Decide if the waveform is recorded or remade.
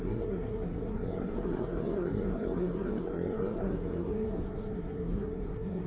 remade